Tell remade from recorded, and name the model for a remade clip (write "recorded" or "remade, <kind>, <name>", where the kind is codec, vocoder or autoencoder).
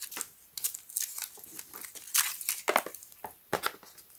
recorded